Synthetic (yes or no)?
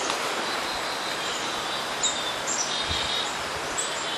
yes